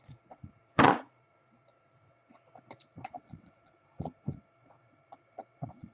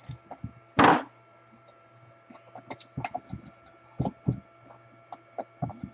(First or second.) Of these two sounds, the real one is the second